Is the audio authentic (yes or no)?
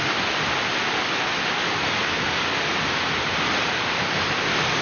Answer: yes